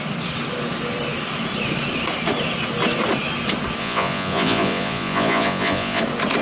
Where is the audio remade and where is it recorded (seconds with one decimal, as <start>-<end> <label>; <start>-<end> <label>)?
0.0-3.8 recorded; 3.8-6.0 remade; 6.0-6.4 recorded